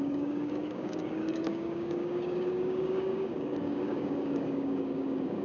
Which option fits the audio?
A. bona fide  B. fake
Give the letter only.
B